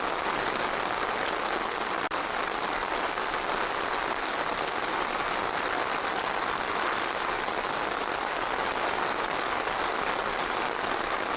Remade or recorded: recorded